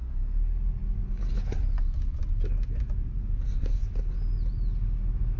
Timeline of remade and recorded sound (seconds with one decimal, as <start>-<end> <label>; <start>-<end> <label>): 0.0-5.4 recorded